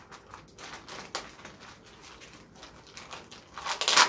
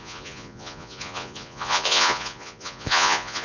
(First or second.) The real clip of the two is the first